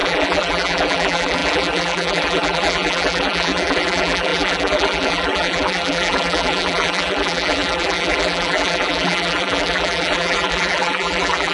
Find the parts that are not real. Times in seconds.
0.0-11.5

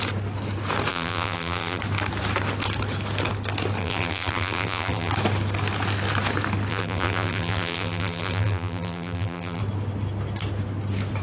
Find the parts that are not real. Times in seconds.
0.9-1.8; 3.8-5.1; 6.7-9.6

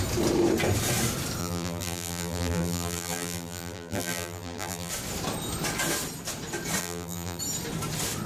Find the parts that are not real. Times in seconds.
1.4-4.9; 6.8-7.4

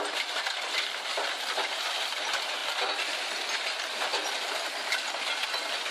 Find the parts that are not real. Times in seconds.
none

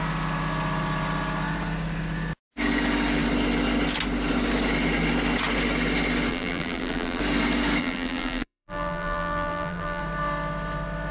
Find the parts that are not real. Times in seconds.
6.3-7.2; 7.8-10.0

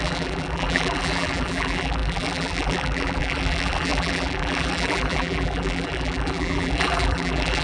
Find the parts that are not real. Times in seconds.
0.0-7.6